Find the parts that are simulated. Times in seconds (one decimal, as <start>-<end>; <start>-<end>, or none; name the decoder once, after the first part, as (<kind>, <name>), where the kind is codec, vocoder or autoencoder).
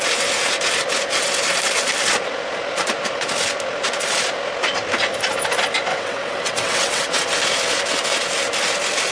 5.9-7.2 (vocoder, WaveNeXt)